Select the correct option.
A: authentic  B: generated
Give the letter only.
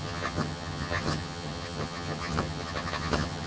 B